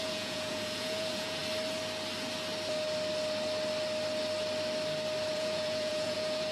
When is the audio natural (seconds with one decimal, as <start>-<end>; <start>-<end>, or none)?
1.4-5.3